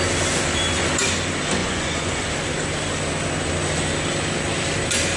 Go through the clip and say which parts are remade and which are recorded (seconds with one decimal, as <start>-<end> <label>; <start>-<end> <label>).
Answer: 0.0-1.6 recorded; 1.6-2.3 remade; 2.3-5.2 recorded